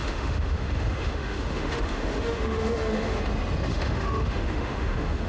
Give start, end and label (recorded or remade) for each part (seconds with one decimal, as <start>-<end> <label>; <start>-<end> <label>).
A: 0.0-3.2 remade; 3.2-3.7 recorded; 3.7-5.3 remade